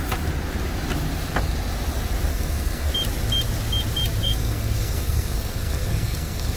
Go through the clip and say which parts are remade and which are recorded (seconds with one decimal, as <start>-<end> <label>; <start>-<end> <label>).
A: 0.0-2.3 recorded; 2.3-2.9 remade; 2.9-4.2 recorded; 4.2-6.6 remade